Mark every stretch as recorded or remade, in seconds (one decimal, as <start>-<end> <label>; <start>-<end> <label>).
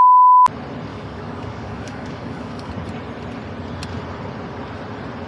0.0-0.9 recorded; 0.9-2.7 remade; 2.7-5.3 recorded